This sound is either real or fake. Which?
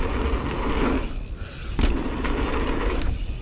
real